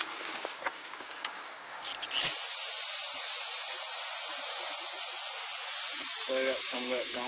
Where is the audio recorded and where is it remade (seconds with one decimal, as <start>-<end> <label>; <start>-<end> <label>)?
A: 0.0-1.9 remade; 1.9-6.3 recorded; 6.3-7.3 remade